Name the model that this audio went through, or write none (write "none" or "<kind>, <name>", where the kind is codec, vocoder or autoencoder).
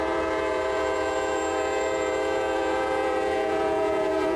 vocoder, Vocos